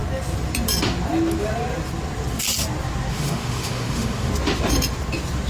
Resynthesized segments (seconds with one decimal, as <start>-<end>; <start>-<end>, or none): 3.1-4.3

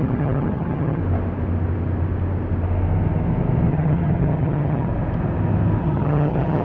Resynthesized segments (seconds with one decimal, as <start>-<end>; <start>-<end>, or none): 0.0-1.0; 3.7-4.9; 5.8-6.6

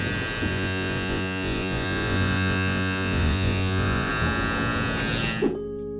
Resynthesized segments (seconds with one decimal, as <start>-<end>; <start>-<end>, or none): 0.5-4.1